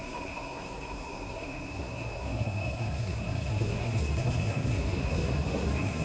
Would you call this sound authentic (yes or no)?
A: no